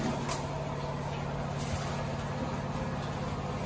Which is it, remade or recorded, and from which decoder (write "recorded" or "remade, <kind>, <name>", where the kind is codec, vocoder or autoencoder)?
recorded